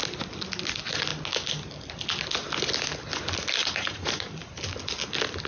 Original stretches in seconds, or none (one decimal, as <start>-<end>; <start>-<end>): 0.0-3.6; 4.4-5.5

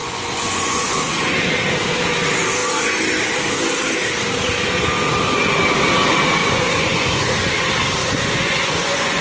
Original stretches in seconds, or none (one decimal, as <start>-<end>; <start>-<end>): 1.3-6.4; 7.5-8.0

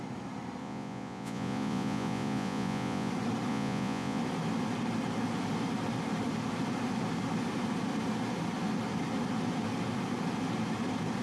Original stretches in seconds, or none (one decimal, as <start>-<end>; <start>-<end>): 0.0-0.6; 3.1-3.5; 4.2-11.2

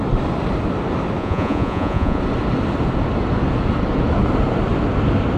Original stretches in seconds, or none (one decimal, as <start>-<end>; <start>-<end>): 0.0-1.2; 2.2-5.4

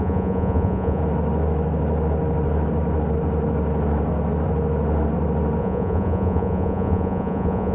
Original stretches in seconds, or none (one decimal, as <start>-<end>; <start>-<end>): 1.0-5.6

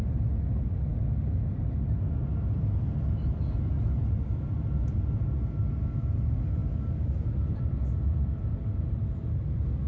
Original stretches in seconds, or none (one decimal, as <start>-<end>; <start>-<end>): 0.0-9.9